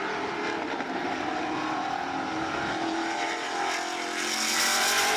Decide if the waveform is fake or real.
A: real